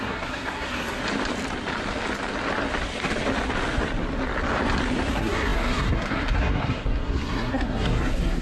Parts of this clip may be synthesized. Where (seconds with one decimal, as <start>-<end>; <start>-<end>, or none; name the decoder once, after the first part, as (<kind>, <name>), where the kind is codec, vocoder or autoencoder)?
0.0-1.0 (codec, SNAC); 5.1-8.4